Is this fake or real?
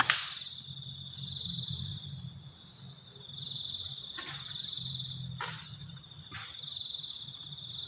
real